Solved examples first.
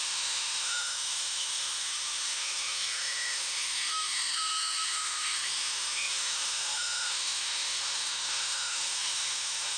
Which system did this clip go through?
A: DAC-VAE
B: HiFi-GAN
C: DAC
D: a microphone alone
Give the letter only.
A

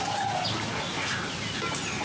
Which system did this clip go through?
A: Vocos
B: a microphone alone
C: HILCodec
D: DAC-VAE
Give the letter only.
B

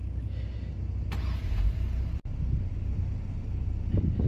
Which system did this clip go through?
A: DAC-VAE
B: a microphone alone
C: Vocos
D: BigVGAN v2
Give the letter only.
B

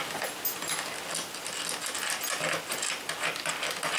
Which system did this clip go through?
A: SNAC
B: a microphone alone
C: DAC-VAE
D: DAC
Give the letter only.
B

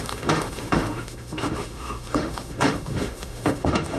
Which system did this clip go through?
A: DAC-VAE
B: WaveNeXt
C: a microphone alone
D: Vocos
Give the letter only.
A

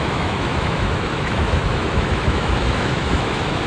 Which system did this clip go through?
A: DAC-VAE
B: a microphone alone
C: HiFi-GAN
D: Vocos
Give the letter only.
A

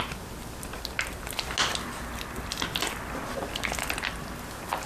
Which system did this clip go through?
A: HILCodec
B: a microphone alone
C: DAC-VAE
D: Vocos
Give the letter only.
B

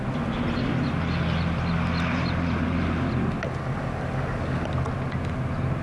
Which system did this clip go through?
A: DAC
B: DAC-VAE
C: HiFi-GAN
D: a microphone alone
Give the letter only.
D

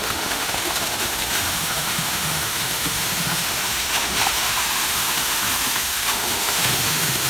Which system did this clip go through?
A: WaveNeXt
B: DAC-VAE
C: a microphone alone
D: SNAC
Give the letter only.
B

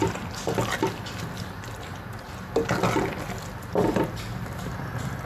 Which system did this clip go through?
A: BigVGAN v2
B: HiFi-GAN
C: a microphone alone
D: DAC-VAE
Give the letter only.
C